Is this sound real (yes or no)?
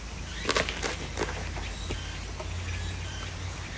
yes